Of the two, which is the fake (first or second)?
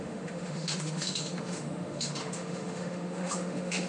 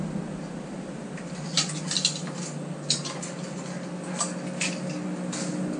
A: first